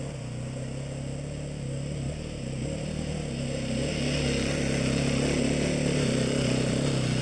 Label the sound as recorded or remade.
recorded